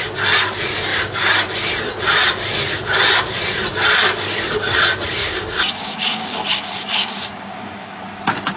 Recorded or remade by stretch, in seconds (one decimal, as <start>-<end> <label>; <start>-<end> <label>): 0.0-5.2 recorded; 5.2-8.0 remade; 8.0-8.6 recorded